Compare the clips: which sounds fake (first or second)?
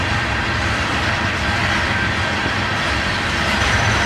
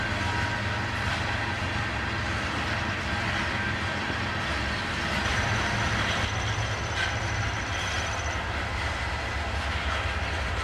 first